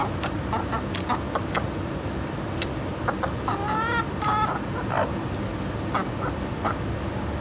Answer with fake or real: real